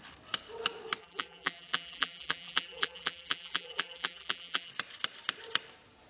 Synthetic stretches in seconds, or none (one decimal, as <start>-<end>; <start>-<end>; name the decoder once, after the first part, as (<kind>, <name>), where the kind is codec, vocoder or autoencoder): 1.0-4.7 (vocoder, BigVGAN v2)